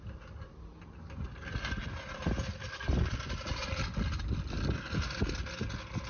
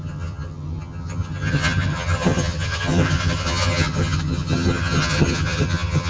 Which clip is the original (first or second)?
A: first